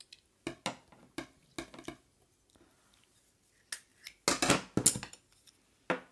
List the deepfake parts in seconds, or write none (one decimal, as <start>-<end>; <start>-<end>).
none